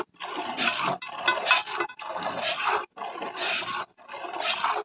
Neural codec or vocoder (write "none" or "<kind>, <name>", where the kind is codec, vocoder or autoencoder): none